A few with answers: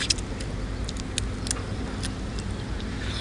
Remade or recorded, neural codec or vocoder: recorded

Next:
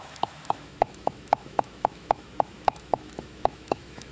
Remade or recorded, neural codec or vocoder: remade, autoencoder, DAC-VAE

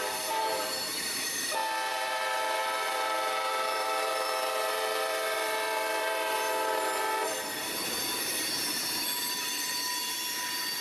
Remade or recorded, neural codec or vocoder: remade, vocoder, BigVGAN v2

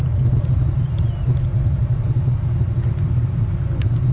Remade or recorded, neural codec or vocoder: recorded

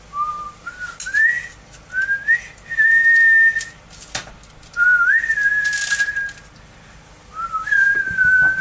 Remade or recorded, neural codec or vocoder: recorded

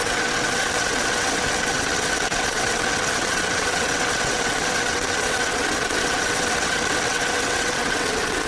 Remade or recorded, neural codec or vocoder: remade, vocoder, WaveNeXt